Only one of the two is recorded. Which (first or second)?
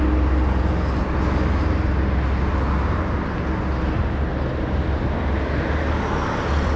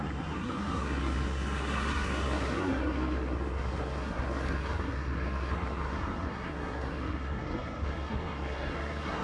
first